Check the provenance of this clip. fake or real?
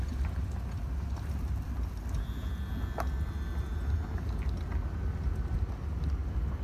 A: real